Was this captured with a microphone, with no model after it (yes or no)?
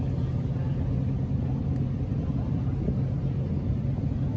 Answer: yes